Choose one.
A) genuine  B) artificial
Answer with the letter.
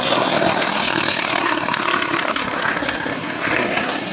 B